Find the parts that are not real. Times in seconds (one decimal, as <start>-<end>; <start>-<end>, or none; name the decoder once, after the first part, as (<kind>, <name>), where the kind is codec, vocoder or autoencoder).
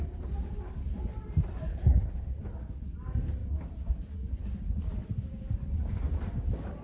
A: 1.7-2.4 (codec, HILCodec)